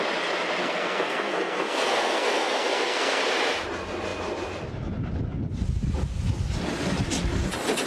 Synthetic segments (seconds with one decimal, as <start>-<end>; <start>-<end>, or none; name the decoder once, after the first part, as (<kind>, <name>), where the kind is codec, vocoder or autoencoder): 0.6-3.2 (codec, SNAC)